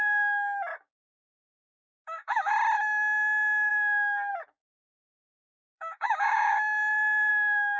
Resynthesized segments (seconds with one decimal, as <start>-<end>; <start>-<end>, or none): 0.7-2.5; 5.7-7.3